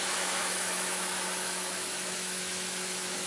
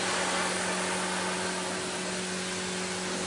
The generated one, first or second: first